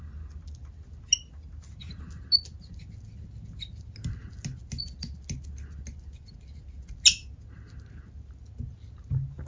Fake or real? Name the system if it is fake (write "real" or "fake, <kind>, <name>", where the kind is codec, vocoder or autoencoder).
real